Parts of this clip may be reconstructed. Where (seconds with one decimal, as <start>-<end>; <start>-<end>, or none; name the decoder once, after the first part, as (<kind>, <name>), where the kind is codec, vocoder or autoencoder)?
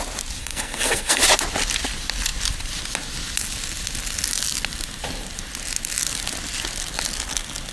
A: 0.4-1.2 (codec, SNAC)